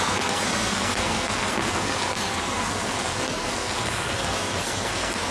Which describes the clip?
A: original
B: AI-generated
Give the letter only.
B